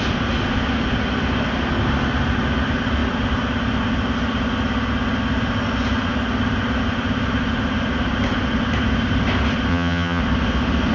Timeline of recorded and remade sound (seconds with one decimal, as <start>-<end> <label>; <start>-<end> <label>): 0.0-9.7 recorded; 9.7-10.2 remade; 10.2-10.9 recorded